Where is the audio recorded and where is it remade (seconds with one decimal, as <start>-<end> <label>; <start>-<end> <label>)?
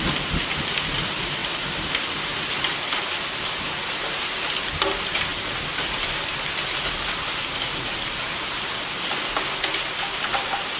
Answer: 0.0-10.8 recorded